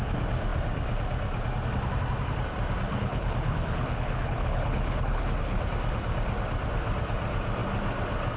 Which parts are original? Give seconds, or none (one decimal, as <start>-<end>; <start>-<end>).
0.0-2.9; 5.6-8.4